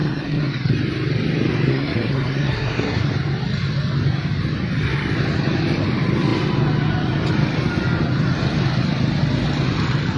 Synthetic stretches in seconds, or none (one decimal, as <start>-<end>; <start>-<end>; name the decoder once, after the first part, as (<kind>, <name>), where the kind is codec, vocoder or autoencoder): 0.0-0.7 (codec, SNAC); 1.7-3.1